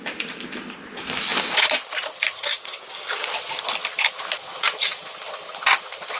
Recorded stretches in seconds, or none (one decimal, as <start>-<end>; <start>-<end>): 0.0-2.5; 3.3-6.2